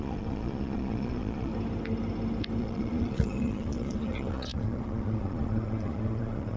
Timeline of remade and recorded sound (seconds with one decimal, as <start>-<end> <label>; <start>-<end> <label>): 0.0-1.5 remade; 1.5-2.6 recorded; 2.6-6.6 remade